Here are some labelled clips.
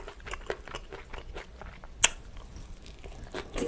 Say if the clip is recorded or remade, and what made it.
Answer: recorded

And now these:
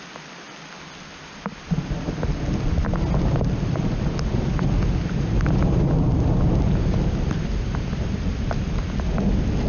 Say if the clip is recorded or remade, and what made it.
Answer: recorded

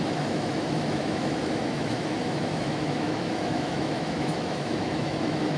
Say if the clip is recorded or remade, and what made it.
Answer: remade, autoencoder, DAC-VAE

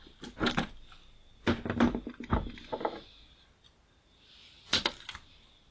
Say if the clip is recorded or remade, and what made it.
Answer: recorded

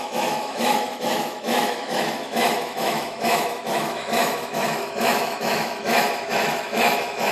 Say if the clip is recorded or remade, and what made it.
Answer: remade, autoencoder, DAC-VAE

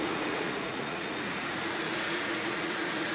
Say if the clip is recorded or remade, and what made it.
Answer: remade, vocoder, Vocos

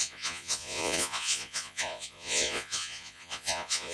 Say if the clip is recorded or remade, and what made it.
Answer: remade, vocoder, Vocos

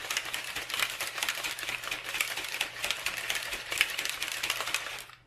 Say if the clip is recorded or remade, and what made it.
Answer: remade, vocoder, BigVGAN v2